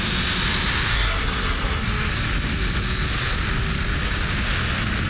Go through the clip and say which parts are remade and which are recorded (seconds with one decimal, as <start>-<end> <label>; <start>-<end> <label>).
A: 0.0-0.9 recorded; 0.9-1.9 remade; 1.9-5.1 recorded